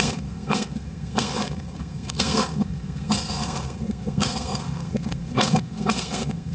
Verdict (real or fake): fake